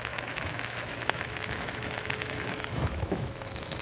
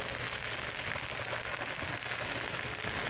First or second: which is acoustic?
second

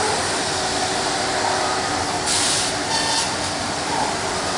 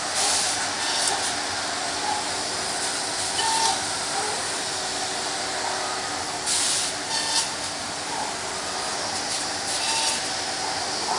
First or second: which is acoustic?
second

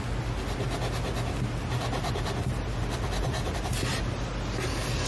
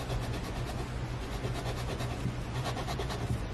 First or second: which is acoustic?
first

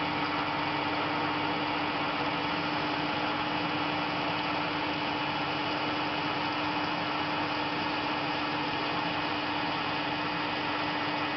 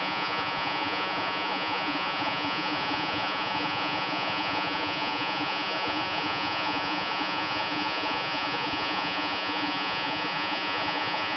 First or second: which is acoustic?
first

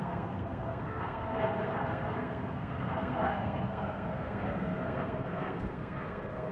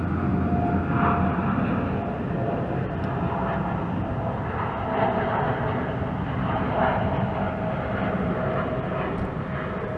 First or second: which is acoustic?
second